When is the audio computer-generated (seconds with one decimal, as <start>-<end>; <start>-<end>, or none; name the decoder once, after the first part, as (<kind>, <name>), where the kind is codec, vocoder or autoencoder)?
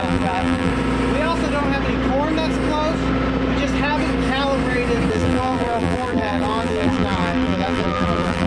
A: 0.0-0.7 (vocoder, BigVGAN v2); 5.1-8.5